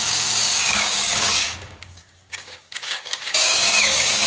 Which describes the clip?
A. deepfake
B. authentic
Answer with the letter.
A